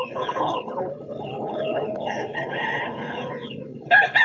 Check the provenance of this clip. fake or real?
fake